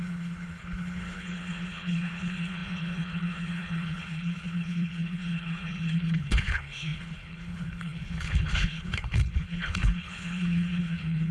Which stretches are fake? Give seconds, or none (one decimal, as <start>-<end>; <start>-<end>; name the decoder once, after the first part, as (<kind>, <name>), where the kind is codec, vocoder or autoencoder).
0.0-11.3 (codec, HILCodec)